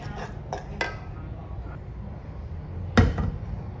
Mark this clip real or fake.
real